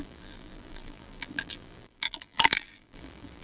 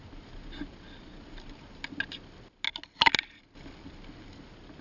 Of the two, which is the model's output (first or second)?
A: first